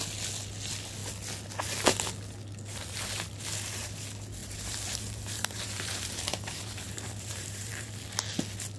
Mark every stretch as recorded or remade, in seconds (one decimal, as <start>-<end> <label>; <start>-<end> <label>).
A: 0.0-4.4 recorded; 4.4-7.9 remade; 7.9-8.8 recorded